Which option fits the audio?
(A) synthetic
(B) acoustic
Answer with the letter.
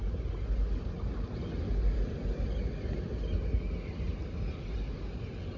B